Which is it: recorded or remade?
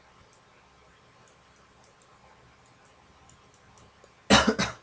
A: recorded